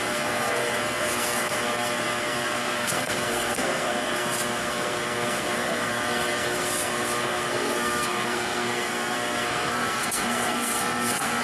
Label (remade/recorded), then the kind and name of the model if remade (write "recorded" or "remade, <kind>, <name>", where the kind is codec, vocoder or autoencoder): remade, codec, SNAC